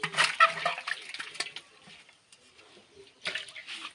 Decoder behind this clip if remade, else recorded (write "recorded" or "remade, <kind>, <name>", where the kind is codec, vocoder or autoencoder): recorded